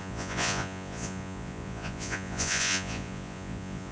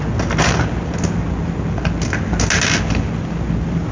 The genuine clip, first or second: second